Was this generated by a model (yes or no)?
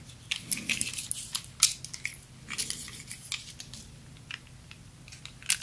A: no